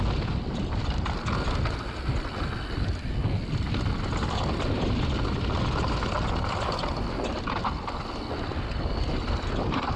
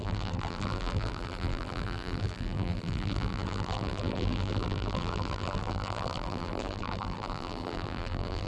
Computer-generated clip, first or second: second